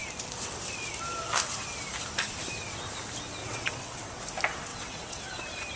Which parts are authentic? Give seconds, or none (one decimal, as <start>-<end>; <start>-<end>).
0.0-3.4; 4.2-4.7; 5.2-5.8